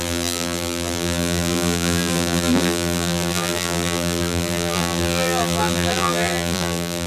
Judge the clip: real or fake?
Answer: fake